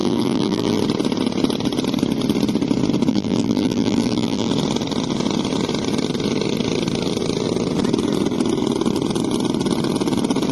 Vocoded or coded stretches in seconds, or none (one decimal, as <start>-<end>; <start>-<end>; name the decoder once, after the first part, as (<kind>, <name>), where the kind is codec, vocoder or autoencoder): 0.0-0.8 (vocoder, BigVGAN v2); 3.1-4.5

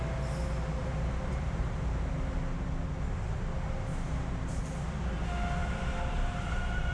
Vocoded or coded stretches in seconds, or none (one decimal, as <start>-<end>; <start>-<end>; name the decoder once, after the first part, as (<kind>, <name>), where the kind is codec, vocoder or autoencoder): 0.8-2.1 (vocoder, BigVGAN v2); 3.9-4.6; 5.6-6.9

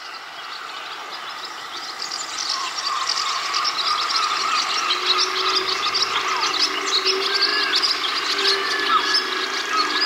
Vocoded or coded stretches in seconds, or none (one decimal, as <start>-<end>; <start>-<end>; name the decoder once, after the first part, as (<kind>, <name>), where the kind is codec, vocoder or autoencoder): 7.5-8.1 (vocoder, BigVGAN v2)

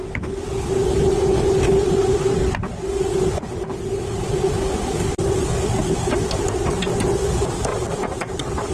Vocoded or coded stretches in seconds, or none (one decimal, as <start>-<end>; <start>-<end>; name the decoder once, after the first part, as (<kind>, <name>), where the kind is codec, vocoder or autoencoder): 7.7-8.7 (vocoder, BigVGAN v2)

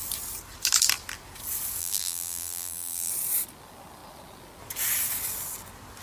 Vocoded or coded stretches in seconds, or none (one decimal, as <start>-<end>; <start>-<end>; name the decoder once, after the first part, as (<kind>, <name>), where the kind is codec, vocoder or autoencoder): 1.8-3.1 (vocoder, BigVGAN v2)

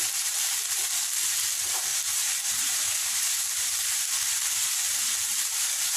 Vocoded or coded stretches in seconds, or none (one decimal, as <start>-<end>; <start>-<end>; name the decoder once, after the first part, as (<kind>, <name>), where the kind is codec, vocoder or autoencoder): 0.0-6.0 (vocoder, BigVGAN v2)

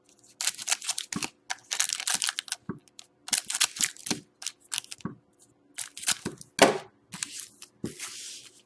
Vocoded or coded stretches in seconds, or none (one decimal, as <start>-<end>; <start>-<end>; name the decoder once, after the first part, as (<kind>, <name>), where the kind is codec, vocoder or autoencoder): 2.8-3.4 (vocoder, BigVGAN v2); 4.0-5.5

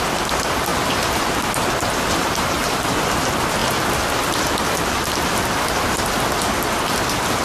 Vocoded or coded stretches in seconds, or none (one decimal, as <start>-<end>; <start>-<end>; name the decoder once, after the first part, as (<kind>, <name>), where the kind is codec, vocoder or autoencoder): 0.7-1.6 (vocoder, BigVGAN v2); 2.2-2.9